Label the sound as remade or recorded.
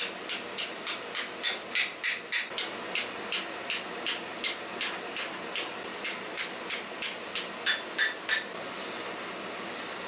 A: recorded